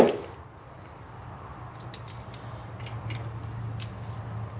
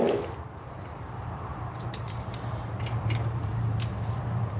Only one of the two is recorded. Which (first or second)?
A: first